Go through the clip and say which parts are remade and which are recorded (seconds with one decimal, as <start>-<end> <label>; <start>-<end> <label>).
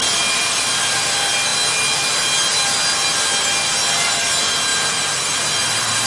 0.0-6.1 recorded